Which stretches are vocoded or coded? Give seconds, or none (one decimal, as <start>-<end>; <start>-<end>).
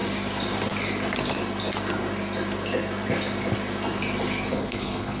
4.5-5.2